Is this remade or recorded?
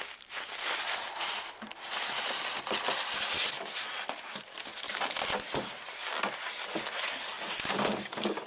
recorded